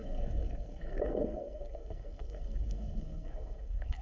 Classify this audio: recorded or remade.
remade